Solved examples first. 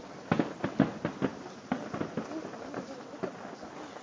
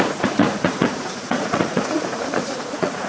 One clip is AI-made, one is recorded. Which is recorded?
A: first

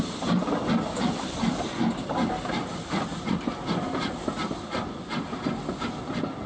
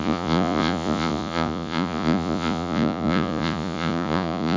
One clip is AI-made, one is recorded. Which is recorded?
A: first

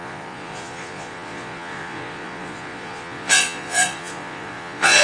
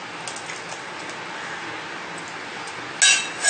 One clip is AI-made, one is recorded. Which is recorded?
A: second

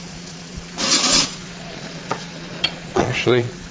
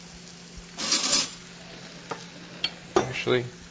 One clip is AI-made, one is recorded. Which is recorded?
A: second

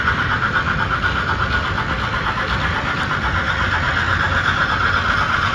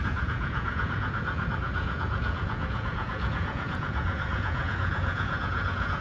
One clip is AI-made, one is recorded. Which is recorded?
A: first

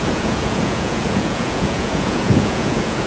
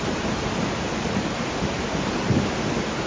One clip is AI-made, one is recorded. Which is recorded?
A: second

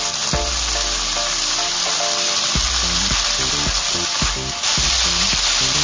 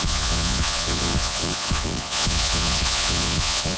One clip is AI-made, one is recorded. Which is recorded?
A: first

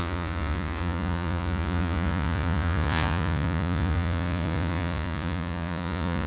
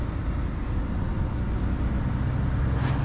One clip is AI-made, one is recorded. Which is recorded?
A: second